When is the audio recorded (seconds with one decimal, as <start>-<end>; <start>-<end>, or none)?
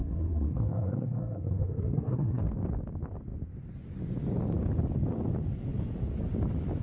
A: 2.4-6.8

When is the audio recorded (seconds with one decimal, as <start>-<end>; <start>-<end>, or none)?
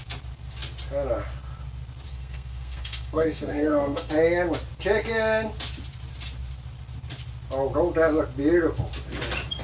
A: 0.0-2.1; 4.1-9.6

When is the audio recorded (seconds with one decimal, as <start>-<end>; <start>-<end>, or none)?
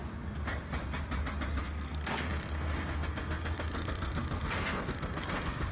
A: 0.0-1.6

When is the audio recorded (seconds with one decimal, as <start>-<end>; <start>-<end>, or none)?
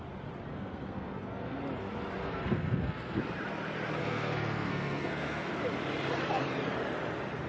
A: 0.0-0.5; 1.6-2.2; 3.2-4.0; 5.6-7.5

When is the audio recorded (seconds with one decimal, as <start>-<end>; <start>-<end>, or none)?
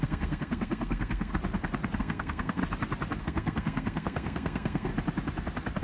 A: 1.3-2.0; 2.6-3.2; 4.9-5.8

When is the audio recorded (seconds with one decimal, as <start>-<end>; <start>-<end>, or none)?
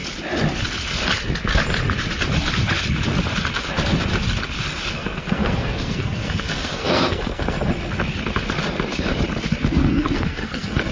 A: 0.0-4.9; 7.6-9.6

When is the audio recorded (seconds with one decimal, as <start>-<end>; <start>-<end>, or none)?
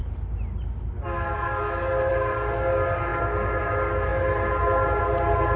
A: 0.0-5.6